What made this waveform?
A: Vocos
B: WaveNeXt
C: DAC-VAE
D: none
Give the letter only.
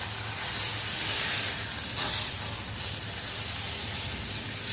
D